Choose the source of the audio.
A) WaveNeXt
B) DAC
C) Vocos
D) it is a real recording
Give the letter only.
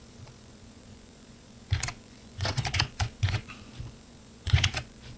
C